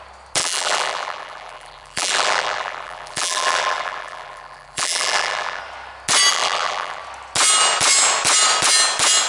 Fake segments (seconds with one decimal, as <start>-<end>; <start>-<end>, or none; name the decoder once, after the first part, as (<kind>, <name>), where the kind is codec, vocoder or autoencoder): 0.4-5.6 (vocoder, BigVGAN v2); 6.3-7.0